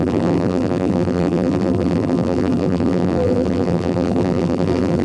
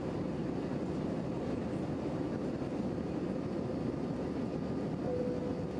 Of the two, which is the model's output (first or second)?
first